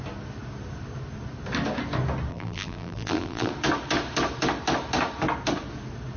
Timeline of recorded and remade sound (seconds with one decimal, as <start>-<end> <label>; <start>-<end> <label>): 0.0-2.3 recorded; 2.3-3.5 remade; 3.5-6.2 recorded